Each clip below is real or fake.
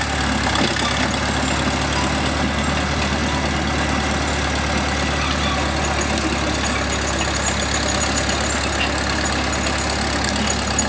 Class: real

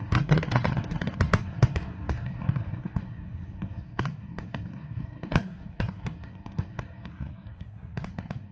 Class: fake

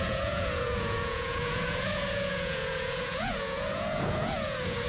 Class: fake